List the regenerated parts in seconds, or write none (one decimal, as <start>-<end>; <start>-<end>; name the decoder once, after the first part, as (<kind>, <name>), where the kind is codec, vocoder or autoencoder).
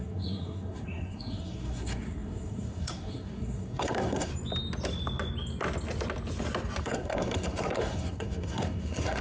0.0-4.3 (codec, SNAC); 6.8-9.2